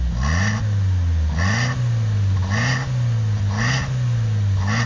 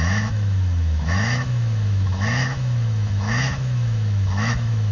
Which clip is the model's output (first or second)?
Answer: second